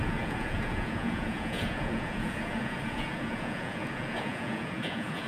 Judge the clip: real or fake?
fake